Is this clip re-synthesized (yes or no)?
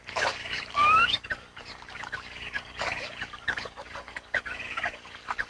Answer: yes